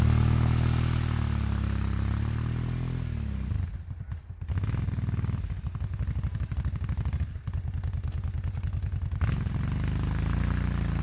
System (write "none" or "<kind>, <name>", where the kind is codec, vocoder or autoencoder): none